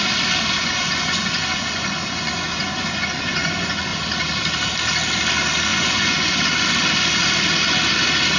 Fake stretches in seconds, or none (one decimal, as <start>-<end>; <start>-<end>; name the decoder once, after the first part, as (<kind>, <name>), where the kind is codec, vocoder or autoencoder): 0.6-4.0 (vocoder, Vocos); 5.7-6.4